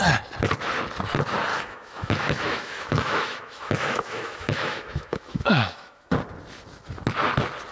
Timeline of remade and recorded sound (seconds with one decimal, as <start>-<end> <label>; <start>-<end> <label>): 0.0-1.5 recorded; 1.5-6.1 remade; 6.1-7.7 recorded